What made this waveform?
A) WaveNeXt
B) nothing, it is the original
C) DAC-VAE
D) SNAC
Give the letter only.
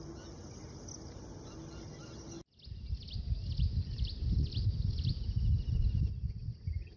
B